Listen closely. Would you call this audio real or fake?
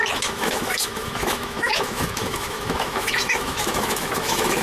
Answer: fake